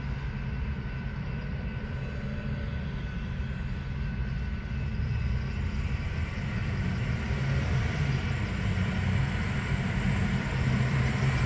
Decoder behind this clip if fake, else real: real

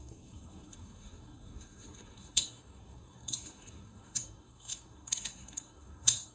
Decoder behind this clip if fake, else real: fake, codec, SNAC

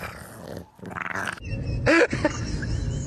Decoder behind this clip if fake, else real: real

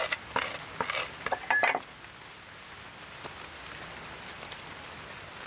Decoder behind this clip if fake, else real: real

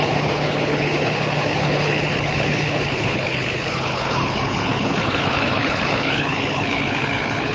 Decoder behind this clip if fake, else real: fake, codec, HILCodec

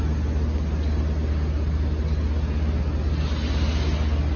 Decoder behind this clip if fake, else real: real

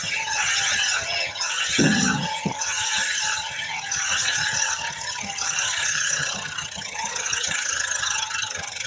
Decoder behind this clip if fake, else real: fake, vocoder, HiFi-GAN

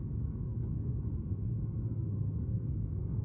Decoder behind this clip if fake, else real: fake, codec, SNAC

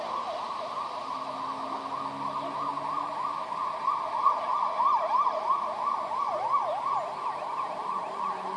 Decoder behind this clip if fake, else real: real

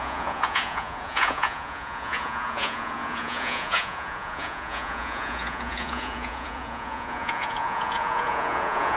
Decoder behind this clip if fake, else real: fake, vocoder, Vocos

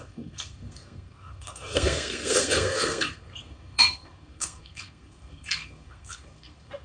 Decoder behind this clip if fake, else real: fake, codec, SNAC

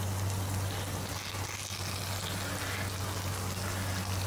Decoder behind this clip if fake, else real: real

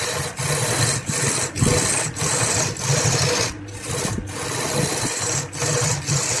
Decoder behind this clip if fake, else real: real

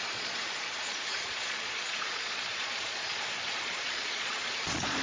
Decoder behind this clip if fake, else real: fake, vocoder, Vocos